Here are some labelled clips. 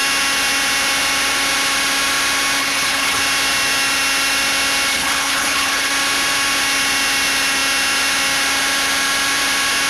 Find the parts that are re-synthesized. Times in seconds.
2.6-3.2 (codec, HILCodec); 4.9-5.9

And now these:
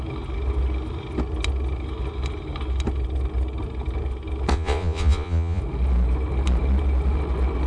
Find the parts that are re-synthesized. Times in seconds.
4.5-5.6 (vocoder, Vocos)

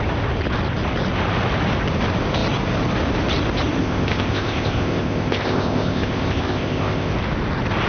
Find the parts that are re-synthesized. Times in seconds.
3.8-7.1 (codec, ZipCodec)

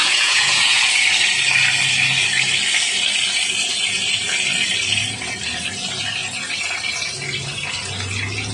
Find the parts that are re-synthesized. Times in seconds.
0.0-0.8 (vocoder, Vocos)

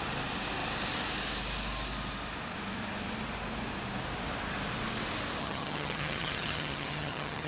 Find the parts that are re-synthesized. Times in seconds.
5.4-7.5 (vocoder, HiFi-GAN)

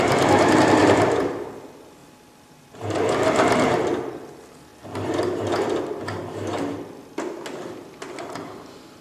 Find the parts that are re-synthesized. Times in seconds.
0.8-1.3 (vocoder, BigVGAN v2); 2.0-3.7